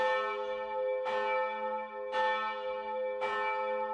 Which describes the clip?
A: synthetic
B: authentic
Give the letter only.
B